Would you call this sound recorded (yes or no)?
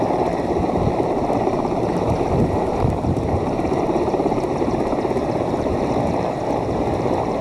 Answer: no